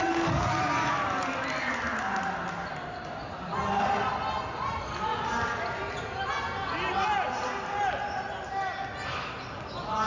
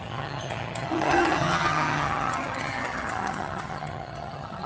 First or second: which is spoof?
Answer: second